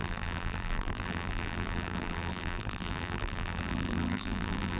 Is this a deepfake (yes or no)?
yes